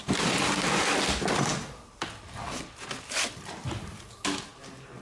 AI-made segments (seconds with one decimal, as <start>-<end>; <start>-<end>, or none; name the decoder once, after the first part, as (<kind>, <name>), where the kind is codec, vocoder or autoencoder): none